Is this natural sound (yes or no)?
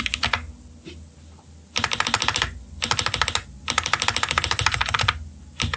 yes